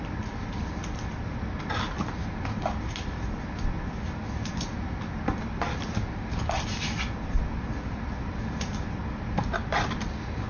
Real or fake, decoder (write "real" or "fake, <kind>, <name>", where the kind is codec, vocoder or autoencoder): real